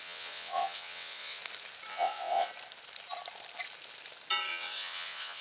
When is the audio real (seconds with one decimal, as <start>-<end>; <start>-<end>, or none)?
1.4-1.9; 2.5-4.5